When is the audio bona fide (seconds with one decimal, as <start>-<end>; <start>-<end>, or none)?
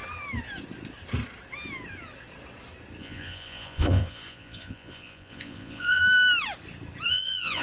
0.0-3.0; 6.0-7.1